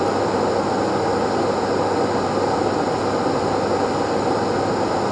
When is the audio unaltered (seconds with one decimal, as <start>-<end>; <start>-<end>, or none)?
0.0-5.1